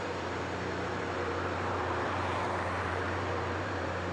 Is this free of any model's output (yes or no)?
no